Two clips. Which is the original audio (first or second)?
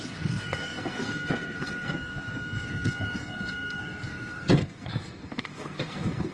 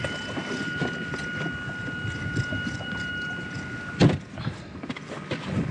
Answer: second